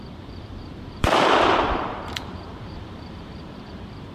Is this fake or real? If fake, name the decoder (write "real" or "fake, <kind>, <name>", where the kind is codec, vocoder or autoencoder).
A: fake, vocoder, BigVGAN v2